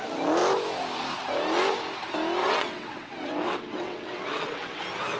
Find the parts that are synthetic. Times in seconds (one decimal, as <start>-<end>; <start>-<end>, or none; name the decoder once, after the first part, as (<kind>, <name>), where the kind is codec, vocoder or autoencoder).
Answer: 2.4-4.8 (vocoder, WaveNeXt)